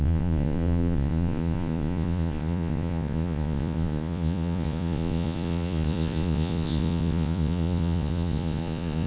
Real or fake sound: fake